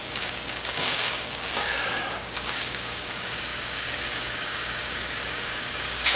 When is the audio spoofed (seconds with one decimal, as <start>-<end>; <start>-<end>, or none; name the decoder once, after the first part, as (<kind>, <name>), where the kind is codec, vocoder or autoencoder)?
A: 0.0-6.2 (codec, DAC)